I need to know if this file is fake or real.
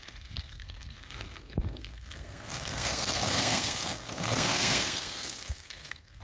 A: fake